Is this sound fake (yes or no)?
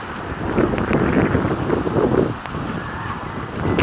no